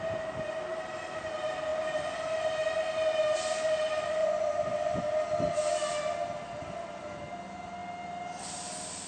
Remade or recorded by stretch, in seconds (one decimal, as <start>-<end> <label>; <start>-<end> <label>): 0.0-4.2 recorded; 4.2-5.0 remade; 5.0-9.1 recorded